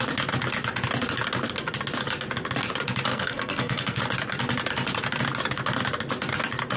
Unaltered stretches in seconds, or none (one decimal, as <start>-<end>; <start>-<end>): 0.0-3.1; 4.0-6.8